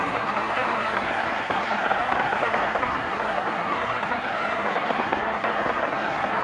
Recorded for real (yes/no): no